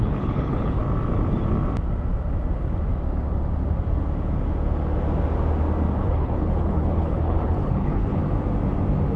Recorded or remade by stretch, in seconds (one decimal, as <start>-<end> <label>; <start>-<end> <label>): 0.0-0.8 remade; 0.8-6.0 recorded; 6.0-8.2 remade; 8.2-9.2 recorded